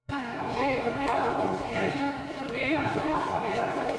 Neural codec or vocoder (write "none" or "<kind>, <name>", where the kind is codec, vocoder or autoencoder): codec, SNAC